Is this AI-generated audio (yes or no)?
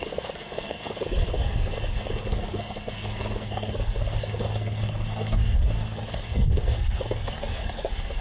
yes